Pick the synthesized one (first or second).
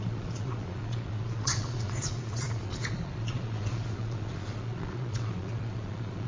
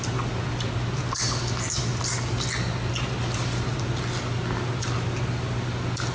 first